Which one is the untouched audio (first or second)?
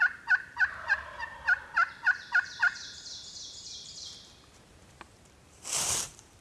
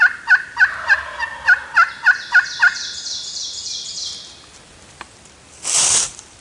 second